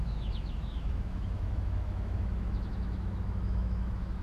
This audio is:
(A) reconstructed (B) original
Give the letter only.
A